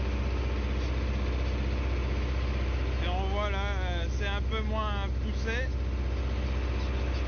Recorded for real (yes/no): yes